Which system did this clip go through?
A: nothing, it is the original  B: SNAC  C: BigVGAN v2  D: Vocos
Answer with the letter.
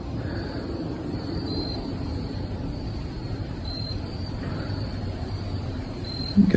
C